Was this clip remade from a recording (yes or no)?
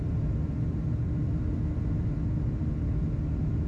yes